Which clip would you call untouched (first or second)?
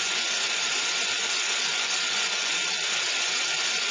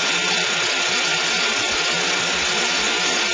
second